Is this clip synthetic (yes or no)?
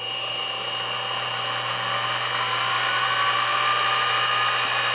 no